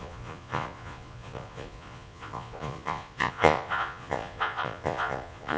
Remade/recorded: remade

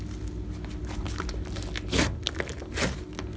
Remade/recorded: recorded